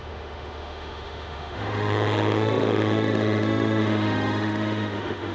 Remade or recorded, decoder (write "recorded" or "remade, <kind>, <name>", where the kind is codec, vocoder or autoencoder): remade, autoencoder, DAC-VAE